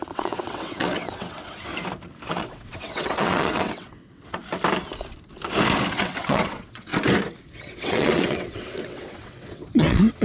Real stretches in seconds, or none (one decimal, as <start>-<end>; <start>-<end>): 1.7-2.3; 4.4-5.9; 6.9-7.6